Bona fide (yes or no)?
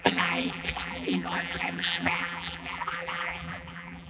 no